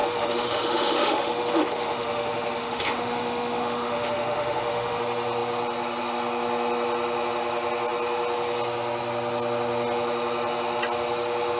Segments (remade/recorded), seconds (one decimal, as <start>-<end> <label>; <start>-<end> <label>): 0.0-5.0 remade; 5.0-11.6 recorded